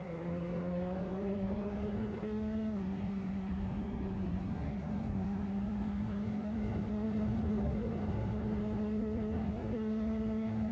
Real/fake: fake